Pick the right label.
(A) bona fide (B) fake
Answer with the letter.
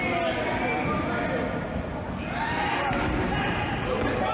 A